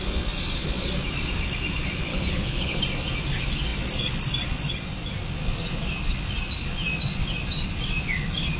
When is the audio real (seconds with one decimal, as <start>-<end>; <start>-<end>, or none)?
0.0-2.1; 2.8-8.6

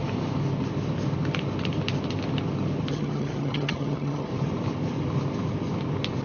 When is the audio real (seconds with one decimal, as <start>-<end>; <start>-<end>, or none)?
0.0-2.9; 4.3-6.2

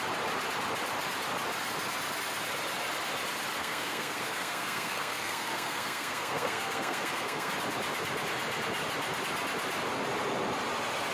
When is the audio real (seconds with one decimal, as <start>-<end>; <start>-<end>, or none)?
0.0-3.6; 7.5-11.1

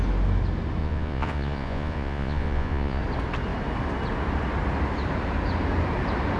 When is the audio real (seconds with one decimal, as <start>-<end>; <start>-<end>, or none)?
0.0-0.8; 3.0-6.4

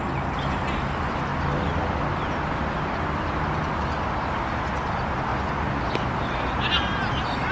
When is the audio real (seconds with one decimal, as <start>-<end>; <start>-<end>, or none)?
0.0-5.3; 5.8-7.5

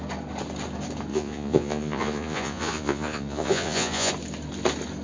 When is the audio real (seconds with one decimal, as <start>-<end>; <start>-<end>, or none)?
0.0-1.1; 4.1-5.0

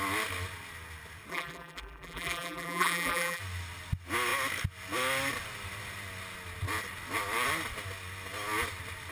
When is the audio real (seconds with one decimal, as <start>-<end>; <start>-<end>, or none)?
0.0-1.3; 3.4-9.1